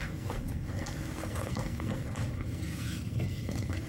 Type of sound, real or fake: fake